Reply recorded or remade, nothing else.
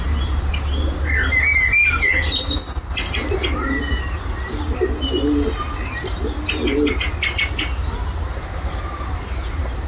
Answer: recorded